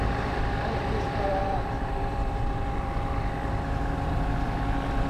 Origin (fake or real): fake